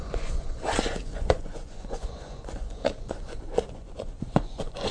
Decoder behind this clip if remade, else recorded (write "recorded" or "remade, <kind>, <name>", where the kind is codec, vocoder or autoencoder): remade, vocoder, Vocos